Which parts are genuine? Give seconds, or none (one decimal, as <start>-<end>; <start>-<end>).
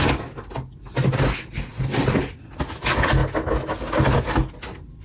0.0-5.0